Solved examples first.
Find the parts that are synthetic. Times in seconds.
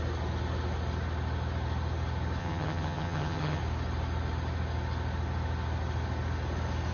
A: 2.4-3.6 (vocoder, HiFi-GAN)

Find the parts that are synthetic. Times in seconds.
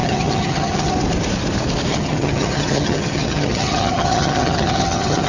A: 0.0-0.9 (vocoder, HiFi-GAN); 1.9-5.3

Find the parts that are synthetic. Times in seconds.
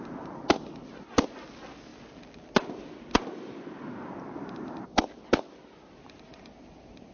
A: none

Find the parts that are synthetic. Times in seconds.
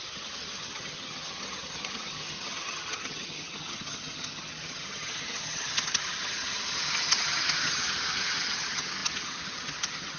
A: 0.0-10.2 (vocoder, HiFi-GAN)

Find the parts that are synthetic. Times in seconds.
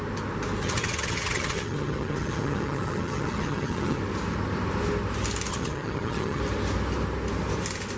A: 0.6-4.0 (vocoder, HiFi-GAN); 5.5-6.4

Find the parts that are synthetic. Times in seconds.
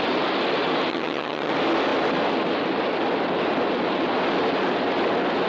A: 0.9-1.5 (vocoder, HiFi-GAN)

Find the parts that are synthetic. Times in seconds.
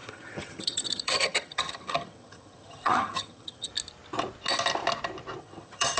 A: 0.0-3.7 (vocoder, HiFi-GAN); 5.4-6.0